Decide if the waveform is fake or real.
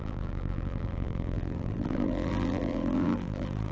fake